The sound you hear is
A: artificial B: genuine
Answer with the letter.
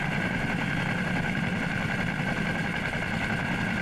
B